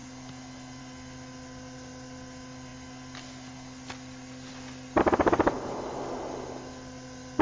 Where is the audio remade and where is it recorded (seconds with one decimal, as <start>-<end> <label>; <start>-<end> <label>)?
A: 0.0-7.4 recorded